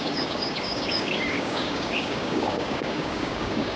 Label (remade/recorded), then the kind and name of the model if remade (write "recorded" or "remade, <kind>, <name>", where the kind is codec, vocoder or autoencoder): remade, codec, DAC